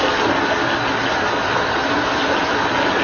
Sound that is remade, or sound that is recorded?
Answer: recorded